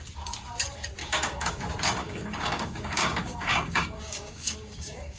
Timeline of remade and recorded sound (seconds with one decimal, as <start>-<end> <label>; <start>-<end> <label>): 0.0-1.0 recorded; 1.0-1.6 remade; 1.6-2.0 recorded; 2.0-5.2 remade